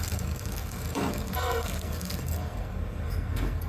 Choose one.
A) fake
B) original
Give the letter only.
A